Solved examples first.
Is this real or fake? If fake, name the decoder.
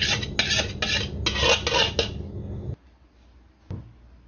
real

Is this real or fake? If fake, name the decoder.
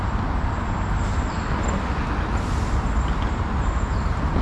real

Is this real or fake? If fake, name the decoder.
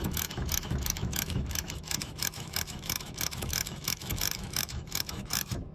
fake, autoencoder, DAC-VAE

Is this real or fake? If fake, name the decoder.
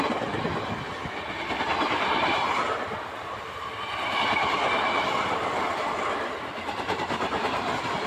real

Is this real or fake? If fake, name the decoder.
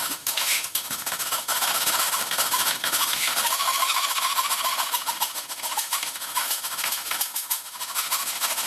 fake, autoencoder, DAC-VAE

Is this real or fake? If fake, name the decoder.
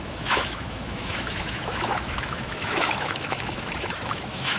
fake, autoencoder, DAC-VAE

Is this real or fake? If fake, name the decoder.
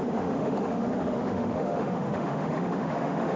fake, autoencoder, DAC-VAE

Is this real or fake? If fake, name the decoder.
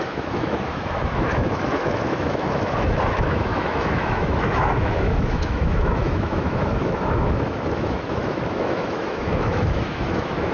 fake, autoencoder, DAC-VAE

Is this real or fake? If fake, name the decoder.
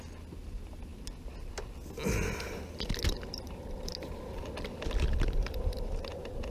real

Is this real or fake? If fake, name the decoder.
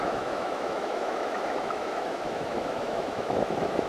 fake, autoencoder, DAC-VAE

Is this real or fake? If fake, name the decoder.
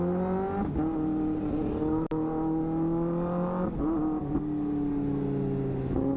real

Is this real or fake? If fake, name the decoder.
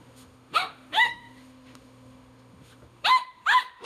fake, autoencoder, DAC-VAE